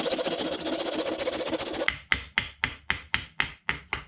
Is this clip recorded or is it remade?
recorded